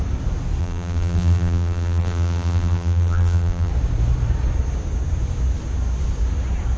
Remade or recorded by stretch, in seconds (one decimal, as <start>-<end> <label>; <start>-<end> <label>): 0.0-0.6 recorded; 0.6-3.7 remade; 3.7-6.8 recorded